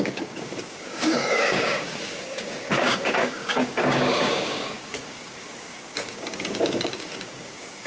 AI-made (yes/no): yes